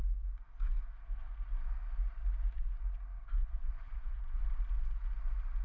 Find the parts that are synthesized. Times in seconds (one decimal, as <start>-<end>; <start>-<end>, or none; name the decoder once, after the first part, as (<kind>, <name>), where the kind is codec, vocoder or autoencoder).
3.4-4.4 (vocoder, Vocos)